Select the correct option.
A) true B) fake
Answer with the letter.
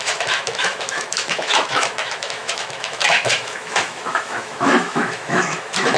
B